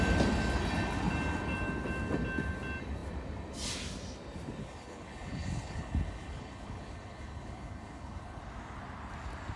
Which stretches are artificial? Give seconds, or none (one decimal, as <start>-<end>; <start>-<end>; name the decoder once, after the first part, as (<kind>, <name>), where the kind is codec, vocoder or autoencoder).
4.6-8.4 (codec, HILCodec)